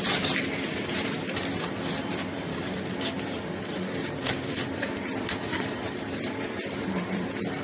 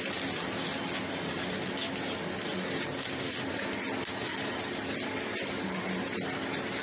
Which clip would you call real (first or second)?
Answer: second